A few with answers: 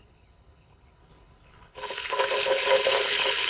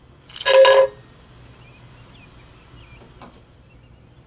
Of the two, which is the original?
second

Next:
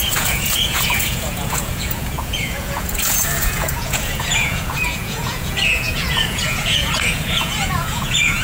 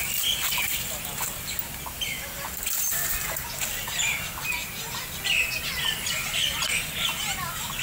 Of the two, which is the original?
second